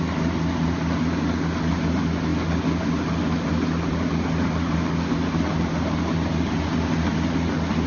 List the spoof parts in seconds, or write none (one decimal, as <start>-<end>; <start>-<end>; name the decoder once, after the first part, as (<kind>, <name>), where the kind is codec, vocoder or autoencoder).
none